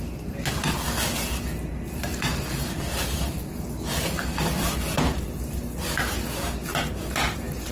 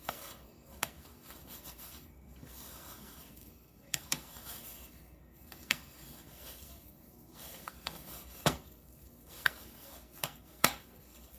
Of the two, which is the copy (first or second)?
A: second